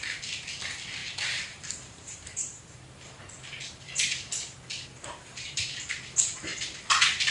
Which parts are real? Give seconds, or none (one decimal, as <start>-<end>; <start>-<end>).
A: 0.0-1.0; 3.2-4.9; 5.7-7.3